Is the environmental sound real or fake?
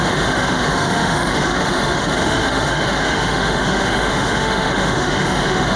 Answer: fake